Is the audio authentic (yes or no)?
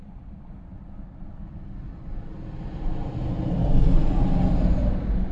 yes